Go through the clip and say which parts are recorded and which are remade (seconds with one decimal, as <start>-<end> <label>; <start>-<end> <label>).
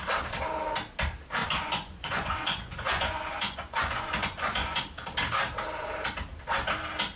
0.0-1.4 recorded; 1.4-4.8 remade; 4.8-7.2 recorded